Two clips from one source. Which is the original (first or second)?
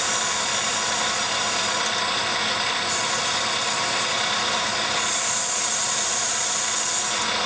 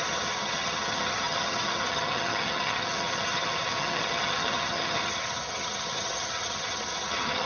first